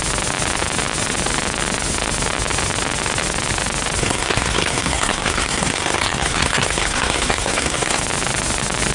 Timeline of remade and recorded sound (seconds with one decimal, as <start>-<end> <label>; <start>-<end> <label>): 0.0-4.0 recorded; 4.0-8.0 remade; 8.0-8.9 recorded